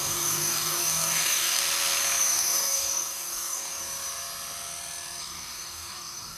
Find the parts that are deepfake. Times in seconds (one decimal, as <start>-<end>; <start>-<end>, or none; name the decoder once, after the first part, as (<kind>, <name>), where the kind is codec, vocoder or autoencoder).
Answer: 0.0-1.6 (codec, DAC); 2.2-3.8; 5.2-6.4